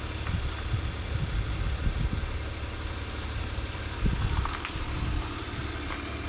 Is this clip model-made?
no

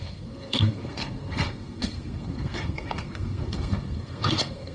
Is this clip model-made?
yes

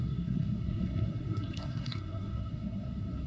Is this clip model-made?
yes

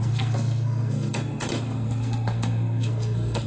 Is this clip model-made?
yes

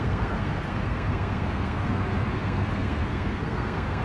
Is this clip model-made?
yes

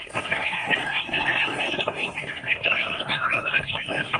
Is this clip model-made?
yes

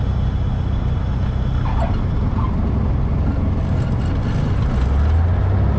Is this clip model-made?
no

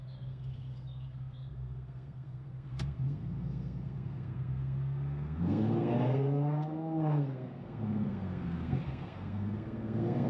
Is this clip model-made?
yes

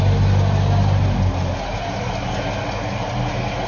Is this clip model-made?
no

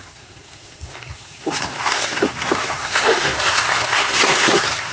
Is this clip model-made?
yes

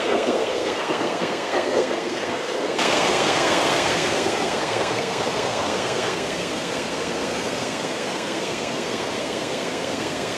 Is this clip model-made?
yes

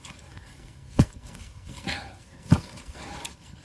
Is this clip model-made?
yes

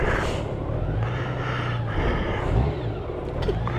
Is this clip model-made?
no